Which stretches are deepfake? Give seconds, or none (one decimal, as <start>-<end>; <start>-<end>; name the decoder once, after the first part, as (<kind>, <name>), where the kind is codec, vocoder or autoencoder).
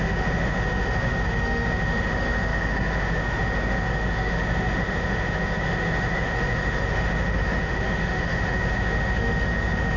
0.0-10.0 (autoencoder, DAC-VAE)